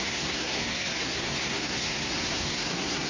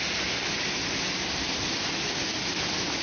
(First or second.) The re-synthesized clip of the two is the first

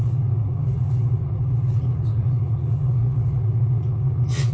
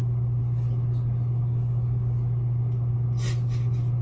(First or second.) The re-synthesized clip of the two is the first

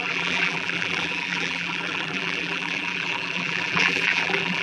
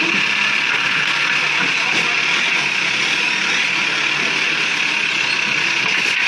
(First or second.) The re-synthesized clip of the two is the first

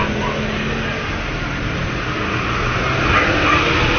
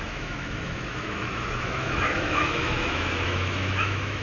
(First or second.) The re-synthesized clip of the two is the second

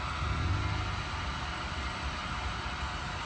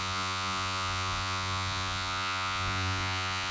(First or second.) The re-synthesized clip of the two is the second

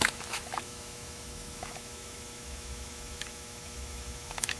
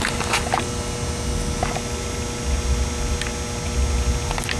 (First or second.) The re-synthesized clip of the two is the first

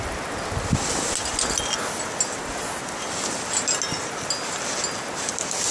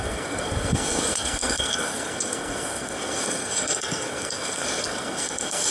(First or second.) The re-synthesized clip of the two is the second